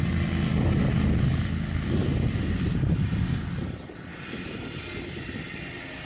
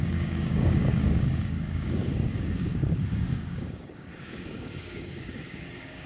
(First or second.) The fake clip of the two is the second